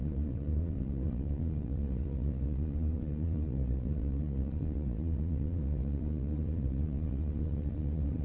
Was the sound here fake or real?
fake